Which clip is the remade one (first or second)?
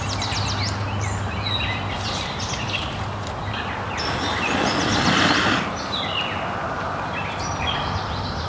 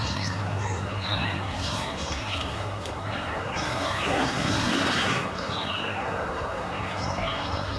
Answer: second